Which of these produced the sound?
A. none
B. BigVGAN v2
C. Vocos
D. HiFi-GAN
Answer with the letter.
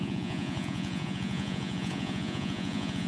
C